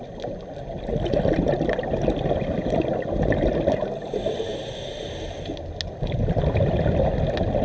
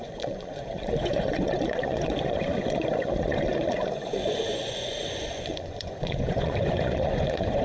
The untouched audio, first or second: first